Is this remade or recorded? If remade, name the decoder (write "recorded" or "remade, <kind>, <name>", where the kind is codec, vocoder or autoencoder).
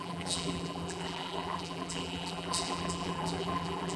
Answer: remade, vocoder, BigVGAN v2